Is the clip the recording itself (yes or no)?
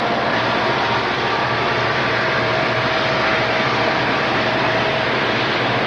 yes